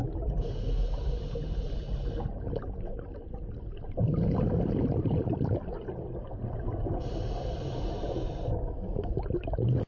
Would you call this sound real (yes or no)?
yes